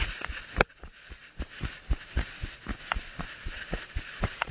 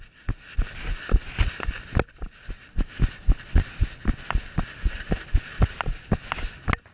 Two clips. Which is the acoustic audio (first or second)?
second